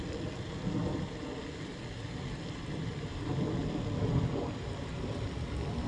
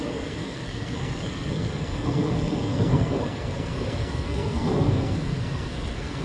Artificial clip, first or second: second